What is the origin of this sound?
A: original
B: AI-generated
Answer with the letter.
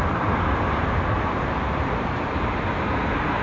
B